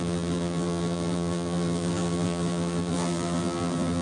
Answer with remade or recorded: remade